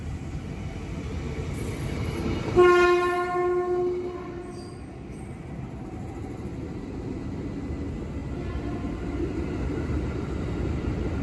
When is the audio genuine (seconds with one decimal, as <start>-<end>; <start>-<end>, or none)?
0.0-11.2